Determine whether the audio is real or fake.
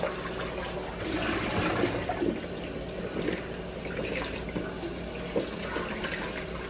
real